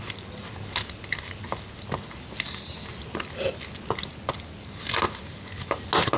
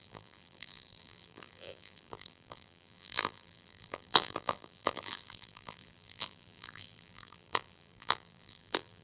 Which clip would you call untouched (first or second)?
first